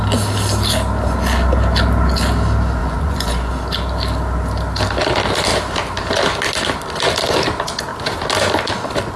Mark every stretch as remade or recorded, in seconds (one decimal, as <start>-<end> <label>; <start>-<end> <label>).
0.0-2.8 recorded; 2.8-3.5 remade; 3.5-9.2 recorded